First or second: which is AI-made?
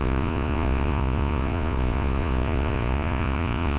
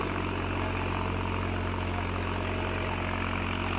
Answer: first